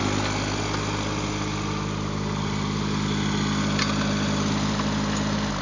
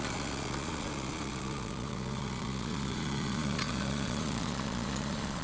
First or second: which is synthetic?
second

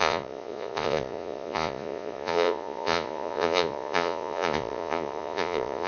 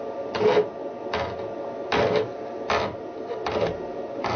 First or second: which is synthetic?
first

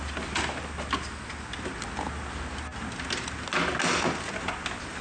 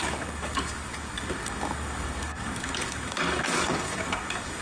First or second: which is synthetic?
second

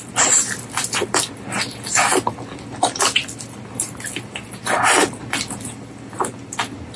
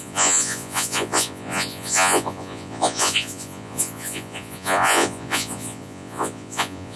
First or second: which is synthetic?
second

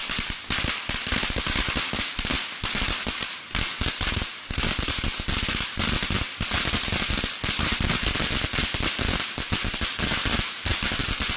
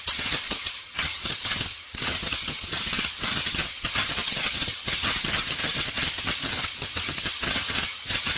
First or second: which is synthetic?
second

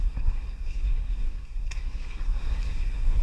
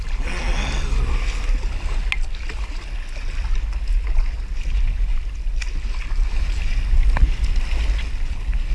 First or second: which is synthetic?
first